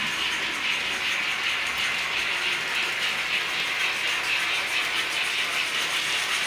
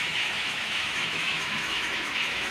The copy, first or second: second